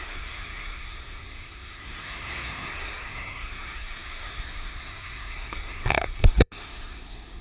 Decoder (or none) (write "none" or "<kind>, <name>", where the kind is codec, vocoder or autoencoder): codec, SNAC